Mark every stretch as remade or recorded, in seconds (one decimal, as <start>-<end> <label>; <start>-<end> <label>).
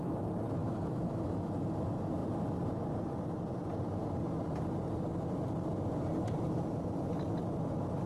0.0-0.6 recorded; 0.6-1.5 remade; 1.5-8.1 recorded